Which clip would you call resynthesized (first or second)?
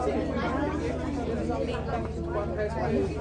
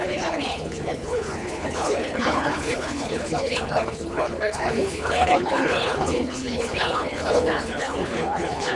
second